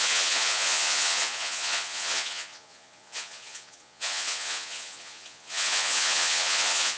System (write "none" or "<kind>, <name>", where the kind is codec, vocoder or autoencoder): vocoder, Vocos